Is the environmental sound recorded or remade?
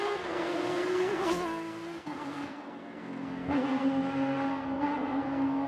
remade